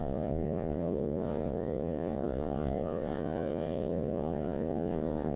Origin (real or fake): fake